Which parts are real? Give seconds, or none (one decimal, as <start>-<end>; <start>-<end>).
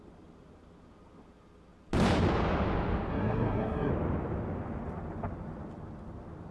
0.0-3.1; 3.9-6.5